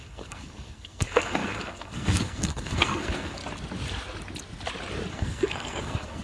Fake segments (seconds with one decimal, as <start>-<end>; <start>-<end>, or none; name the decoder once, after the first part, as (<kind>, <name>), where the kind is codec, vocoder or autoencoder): 0.0-3.4 (codec, SNAC); 5.1-6.2